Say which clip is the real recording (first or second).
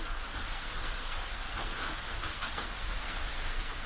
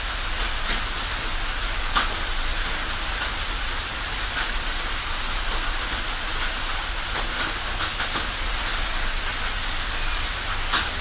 second